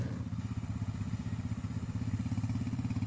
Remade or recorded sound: recorded